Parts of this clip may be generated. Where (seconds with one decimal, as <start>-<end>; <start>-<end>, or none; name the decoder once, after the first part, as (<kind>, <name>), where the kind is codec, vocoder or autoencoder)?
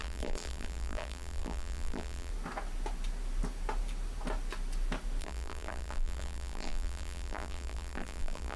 0.0-2.3 (vocoder, BigVGAN v2); 5.2-8.6